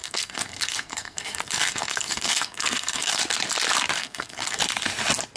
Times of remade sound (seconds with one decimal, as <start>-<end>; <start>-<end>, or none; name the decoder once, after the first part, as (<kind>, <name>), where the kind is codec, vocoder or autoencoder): 0.0-3.2 (codec, SNAC); 4.0-4.6